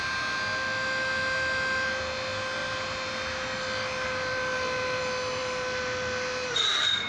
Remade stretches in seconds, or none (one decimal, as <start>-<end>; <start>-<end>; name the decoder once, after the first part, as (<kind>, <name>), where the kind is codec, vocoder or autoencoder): 2.6-5.0 (vocoder, BigVGAN v2); 5.4-7.1